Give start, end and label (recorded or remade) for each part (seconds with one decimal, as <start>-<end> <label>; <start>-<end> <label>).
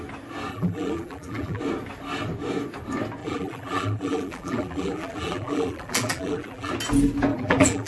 0.0-0.5 recorded; 0.5-1.6 remade; 1.6-3.2 recorded; 3.2-6.7 remade; 6.7-7.3 recorded; 7.3-7.9 remade